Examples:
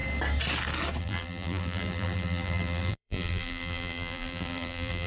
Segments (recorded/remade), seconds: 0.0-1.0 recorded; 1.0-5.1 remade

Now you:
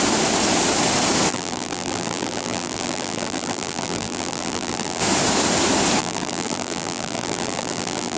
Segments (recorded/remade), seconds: 0.0-1.3 recorded; 1.3-5.0 remade; 5.0-6.0 recorded; 6.0-8.2 remade

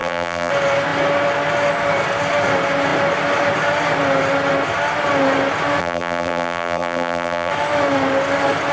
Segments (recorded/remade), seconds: 0.0-0.5 remade; 0.5-5.8 recorded; 5.8-7.5 remade; 7.5-8.7 recorded